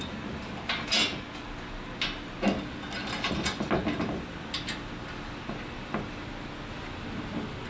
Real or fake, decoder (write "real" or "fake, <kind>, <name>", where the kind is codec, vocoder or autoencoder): real